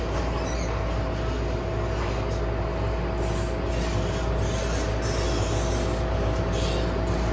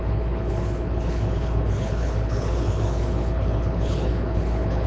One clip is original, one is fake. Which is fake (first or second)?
second